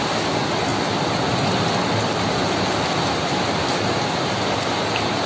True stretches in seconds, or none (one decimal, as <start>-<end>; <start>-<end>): 0.0-5.3